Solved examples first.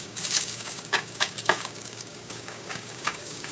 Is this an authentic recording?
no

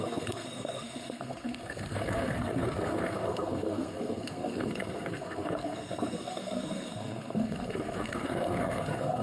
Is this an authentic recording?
no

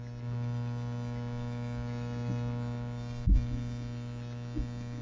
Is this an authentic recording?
yes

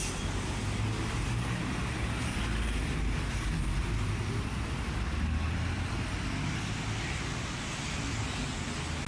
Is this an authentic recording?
yes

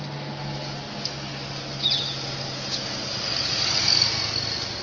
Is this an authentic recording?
yes